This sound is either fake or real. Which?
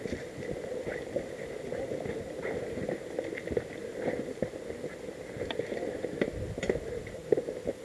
fake